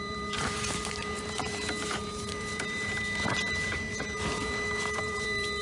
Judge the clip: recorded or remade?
remade